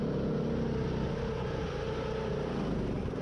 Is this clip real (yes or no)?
yes